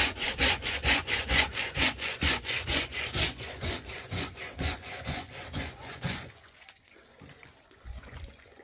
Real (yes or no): no